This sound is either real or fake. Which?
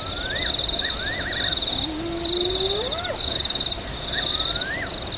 real